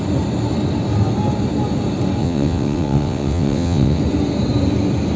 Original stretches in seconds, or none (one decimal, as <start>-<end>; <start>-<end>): 0.0-2.2; 4.0-5.2